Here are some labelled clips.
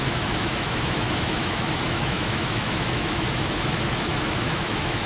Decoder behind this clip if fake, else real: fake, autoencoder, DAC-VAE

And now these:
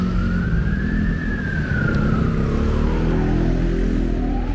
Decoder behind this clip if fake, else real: real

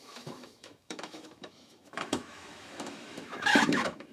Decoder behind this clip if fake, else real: fake, autoencoder, DAC-VAE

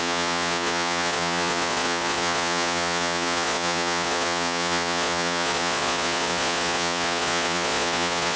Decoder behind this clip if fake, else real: fake, vocoder, Vocos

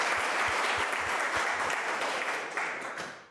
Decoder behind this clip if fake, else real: fake, vocoder, BigVGAN v2